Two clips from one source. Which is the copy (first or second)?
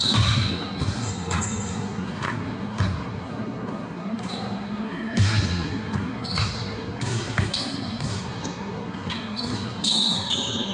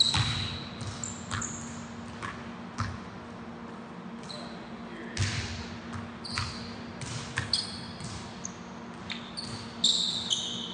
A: first